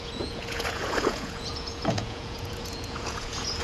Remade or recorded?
remade